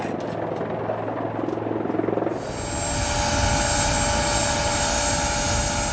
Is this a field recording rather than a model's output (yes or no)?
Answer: yes